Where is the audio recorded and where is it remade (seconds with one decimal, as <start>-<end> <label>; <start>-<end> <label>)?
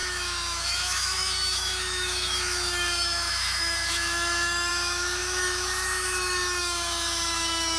0.0-7.8 remade